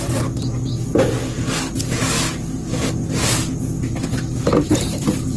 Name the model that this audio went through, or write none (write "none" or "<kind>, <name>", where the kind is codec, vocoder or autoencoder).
none